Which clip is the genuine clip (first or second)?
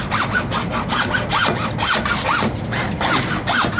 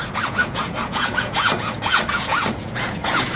first